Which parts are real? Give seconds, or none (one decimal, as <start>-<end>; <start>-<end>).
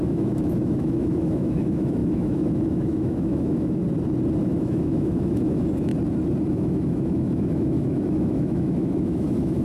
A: 3.8-4.4; 5.9-6.5